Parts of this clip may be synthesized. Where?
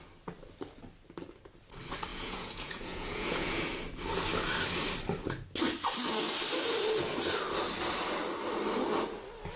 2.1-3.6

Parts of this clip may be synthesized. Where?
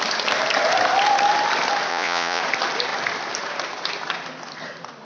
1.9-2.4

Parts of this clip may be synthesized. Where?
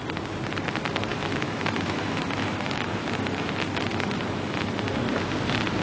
1.1-3.5; 3.9-4.8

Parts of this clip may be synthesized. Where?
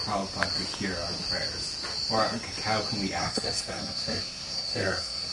3.2-5.3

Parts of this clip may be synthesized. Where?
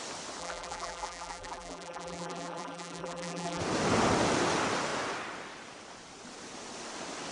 0.4-3.6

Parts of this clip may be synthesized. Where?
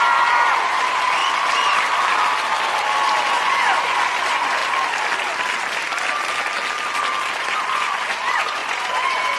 0.0-1.2; 3.3-4.6; 7.4-9.4